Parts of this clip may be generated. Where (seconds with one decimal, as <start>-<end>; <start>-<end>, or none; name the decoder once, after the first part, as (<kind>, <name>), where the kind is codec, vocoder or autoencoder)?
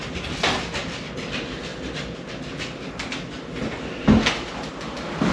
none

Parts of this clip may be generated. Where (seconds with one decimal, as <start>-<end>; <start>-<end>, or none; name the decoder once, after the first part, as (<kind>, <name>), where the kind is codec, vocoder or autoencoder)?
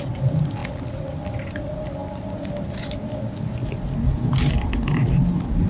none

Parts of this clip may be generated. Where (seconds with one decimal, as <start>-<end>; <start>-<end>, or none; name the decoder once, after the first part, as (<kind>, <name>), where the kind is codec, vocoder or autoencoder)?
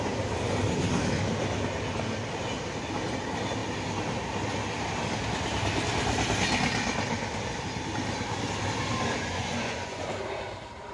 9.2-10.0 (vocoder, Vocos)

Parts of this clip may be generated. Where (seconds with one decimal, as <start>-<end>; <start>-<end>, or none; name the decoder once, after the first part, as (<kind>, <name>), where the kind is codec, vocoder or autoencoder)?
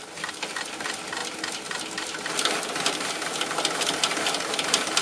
none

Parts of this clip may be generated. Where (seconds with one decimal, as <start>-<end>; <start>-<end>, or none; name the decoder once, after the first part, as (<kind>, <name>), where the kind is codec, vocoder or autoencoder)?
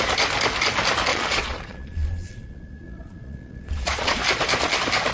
1.1-4.2 (vocoder, Vocos)